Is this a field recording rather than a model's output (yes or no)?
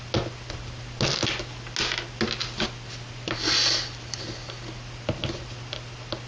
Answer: yes